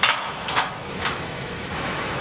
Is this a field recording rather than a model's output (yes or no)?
no